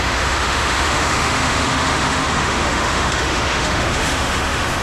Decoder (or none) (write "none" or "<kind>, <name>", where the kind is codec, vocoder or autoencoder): autoencoder, DAC-VAE